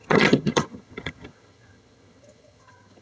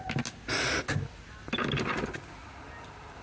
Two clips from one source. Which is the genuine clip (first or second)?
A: second